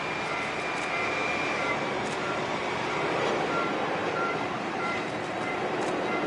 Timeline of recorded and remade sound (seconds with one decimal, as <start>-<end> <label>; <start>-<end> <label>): 0.0-1.2 recorded; 1.2-3.4 remade; 3.4-4.0 recorded; 4.0-5.2 remade; 5.2-6.3 recorded